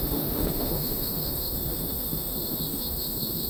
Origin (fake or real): fake